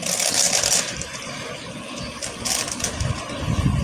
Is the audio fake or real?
real